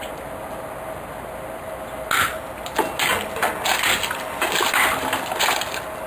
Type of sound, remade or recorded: recorded